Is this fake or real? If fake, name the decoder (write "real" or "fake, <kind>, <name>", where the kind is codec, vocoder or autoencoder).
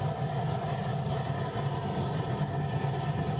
real